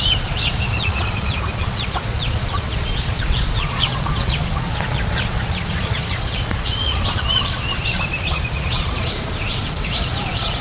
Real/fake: fake